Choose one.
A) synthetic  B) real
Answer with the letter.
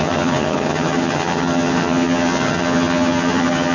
A